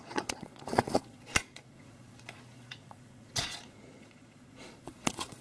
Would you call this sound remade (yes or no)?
yes